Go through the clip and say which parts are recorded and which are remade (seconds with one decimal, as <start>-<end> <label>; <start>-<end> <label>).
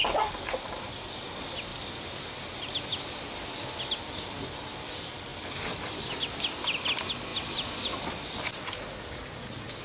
0.0-1.7 recorded; 1.7-2.2 remade; 2.2-5.3 recorded; 5.3-6.8 remade; 6.8-9.8 recorded